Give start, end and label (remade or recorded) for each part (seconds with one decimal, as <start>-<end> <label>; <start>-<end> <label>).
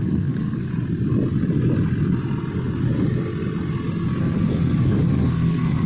0.0-0.7 remade; 0.7-4.2 recorded; 4.2-5.9 remade